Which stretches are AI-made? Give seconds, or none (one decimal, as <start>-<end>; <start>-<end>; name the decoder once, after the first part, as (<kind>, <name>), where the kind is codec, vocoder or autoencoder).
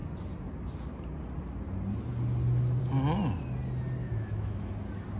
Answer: 4.0-4.7 (autoencoder, DAC-VAE)